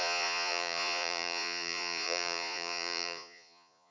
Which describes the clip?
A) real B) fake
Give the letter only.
B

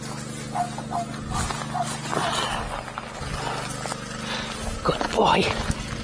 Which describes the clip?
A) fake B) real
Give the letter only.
B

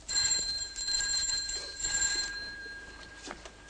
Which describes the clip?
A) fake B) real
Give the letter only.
A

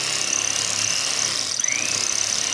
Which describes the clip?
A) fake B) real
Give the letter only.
B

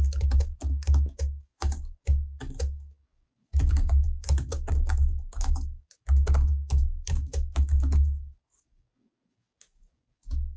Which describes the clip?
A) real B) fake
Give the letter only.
B